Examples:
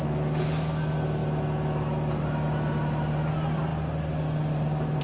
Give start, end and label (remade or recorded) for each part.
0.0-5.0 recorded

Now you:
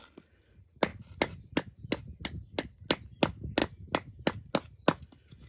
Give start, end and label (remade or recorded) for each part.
0.0-5.5 recorded

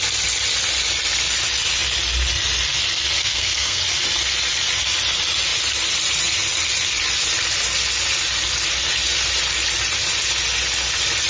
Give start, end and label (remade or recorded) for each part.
0.0-3.2 recorded; 3.2-3.8 remade; 3.8-11.3 recorded

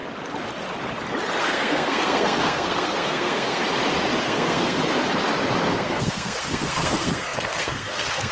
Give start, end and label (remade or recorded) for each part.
0.0-1.4 recorded; 1.4-3.6 remade; 3.6-4.2 recorded; 4.2-4.8 remade; 4.8-5.7 recorded; 5.7-8.3 remade